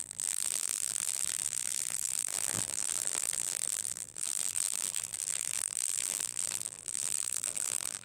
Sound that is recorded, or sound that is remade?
remade